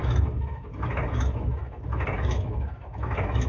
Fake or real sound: fake